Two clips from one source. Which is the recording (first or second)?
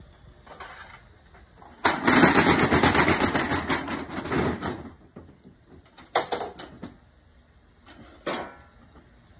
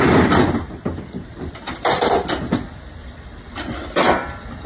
first